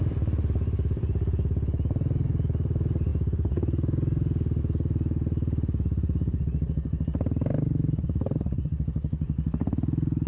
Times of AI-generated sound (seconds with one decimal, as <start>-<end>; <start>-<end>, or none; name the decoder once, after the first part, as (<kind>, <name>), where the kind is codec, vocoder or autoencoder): 0.0-10.3 (vocoder, BigVGAN v2)